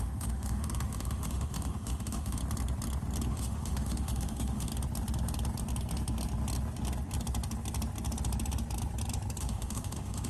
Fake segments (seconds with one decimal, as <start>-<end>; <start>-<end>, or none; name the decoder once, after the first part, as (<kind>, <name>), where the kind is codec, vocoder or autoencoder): 0.0-2.4 (autoencoder, DAC-VAE); 3.3-4.7; 9.4-10.3